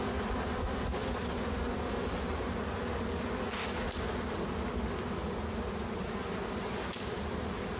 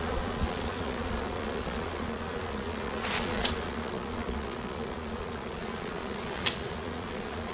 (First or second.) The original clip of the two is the first